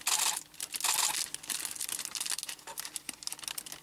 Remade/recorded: recorded